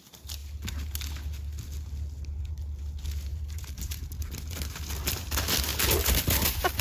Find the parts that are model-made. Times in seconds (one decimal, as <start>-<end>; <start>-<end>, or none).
3.3-4.1